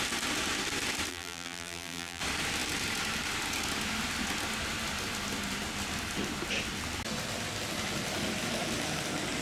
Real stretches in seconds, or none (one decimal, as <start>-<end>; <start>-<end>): 0.0-1.1; 2.2-9.4